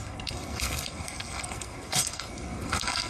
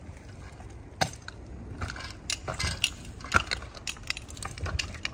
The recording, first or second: second